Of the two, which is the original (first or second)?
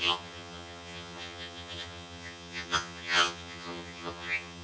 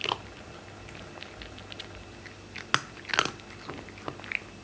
second